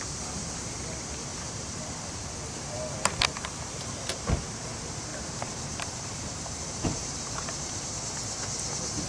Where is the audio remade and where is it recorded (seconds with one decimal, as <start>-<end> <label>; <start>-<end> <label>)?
0.0-1.3 recorded; 1.3-2.2 remade; 2.2-5.1 recorded; 5.1-7.9 remade; 7.9-9.1 recorded